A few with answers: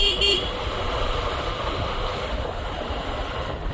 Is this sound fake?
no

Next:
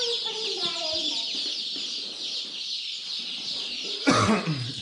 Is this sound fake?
no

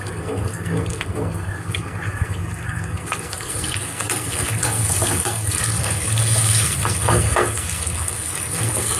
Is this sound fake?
yes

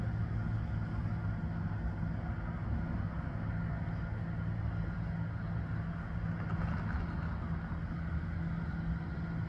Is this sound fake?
no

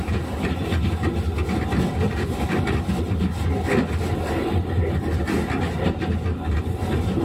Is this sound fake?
no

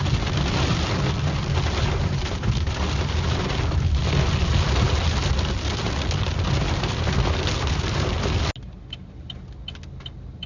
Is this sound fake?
no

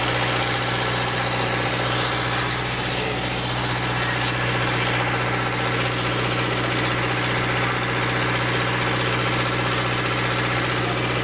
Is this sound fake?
no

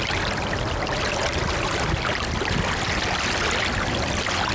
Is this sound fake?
no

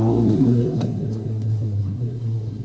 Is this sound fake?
yes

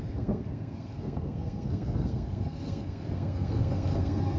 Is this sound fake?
yes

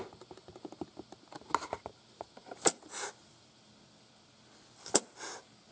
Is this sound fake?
no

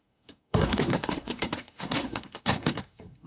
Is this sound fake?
yes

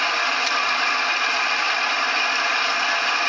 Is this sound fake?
no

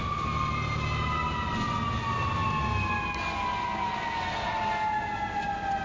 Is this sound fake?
no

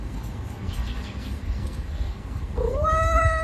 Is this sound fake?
yes